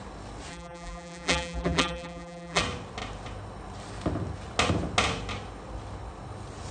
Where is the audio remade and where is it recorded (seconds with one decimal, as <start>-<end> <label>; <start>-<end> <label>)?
0.0-0.5 recorded; 0.5-2.6 remade; 2.6-6.7 recorded